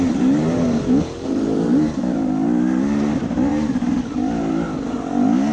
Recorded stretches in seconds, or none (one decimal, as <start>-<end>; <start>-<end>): 0.0-5.5